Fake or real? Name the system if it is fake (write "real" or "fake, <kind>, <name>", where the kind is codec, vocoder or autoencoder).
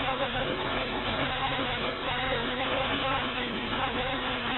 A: fake, codec, SNAC